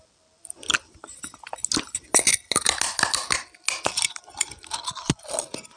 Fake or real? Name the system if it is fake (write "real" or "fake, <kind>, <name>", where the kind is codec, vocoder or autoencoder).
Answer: real